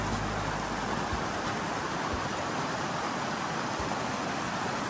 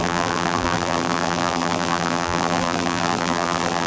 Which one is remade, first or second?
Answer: second